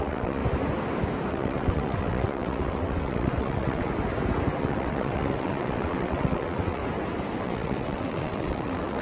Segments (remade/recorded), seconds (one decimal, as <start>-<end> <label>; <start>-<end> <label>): 0.0-0.4 remade; 0.4-1.3 recorded; 1.3-3.9 remade; 3.9-4.6 recorded; 4.6-6.8 remade; 6.8-7.4 recorded; 7.4-9.0 remade